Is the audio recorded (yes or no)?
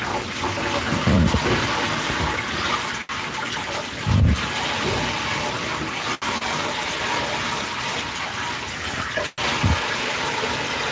yes